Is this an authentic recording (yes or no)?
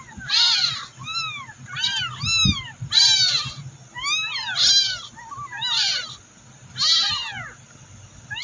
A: yes